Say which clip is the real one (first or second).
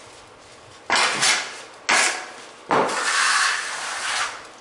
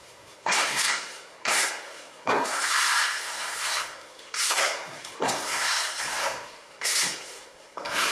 first